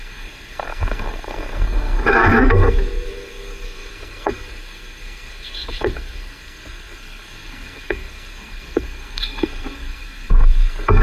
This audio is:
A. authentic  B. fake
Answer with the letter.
B